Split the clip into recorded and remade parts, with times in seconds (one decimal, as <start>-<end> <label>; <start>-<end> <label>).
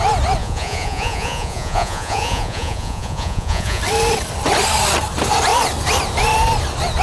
0.0-0.4 recorded; 0.4-3.8 remade; 3.8-7.0 recorded